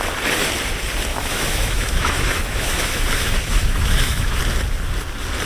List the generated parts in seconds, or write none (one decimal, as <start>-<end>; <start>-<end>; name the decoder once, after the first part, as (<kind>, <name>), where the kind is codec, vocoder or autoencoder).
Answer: 1.1-4.4 (autoencoder, DAC-VAE)